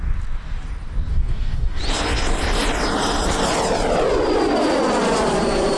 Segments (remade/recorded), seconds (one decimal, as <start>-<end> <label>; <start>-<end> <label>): 0.0-1.1 recorded; 1.1-1.8 remade; 1.8-5.8 recorded